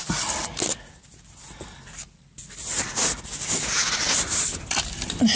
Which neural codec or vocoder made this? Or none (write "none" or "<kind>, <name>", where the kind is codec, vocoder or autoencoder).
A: none